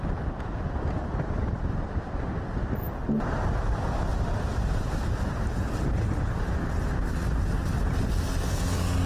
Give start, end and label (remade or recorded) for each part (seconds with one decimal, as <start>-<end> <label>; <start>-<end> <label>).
0.0-4.1 recorded; 4.1-6.5 remade; 6.5-9.1 recorded